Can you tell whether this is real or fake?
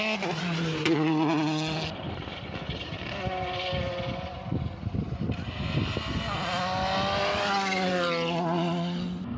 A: real